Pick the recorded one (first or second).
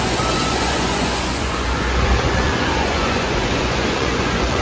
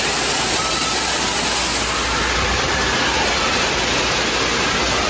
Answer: second